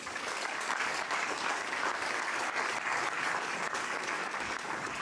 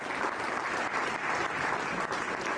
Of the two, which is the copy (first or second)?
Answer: first